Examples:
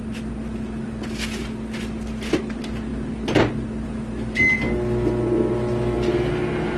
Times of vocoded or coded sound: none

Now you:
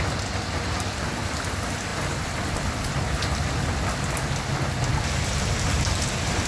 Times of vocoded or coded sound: none

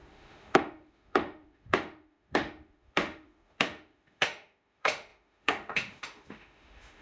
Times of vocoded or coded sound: 0.0-7.0 (autoencoder, DAC-VAE)

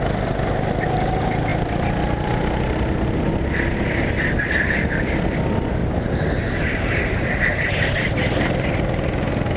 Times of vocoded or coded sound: 5.8-8.7 (vocoder, BigVGAN v2)

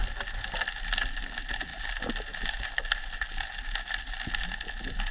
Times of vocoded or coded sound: none

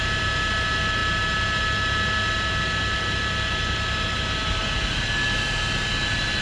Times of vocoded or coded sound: none

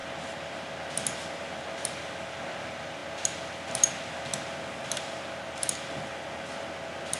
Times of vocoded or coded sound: none